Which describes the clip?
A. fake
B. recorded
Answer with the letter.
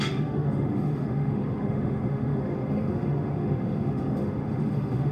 A